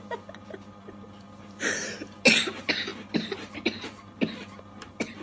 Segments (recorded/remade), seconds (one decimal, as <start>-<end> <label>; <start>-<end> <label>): 0.0-5.2 recorded